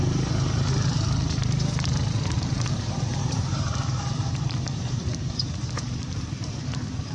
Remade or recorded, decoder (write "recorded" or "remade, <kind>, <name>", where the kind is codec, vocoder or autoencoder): remade, vocoder, BigVGAN v2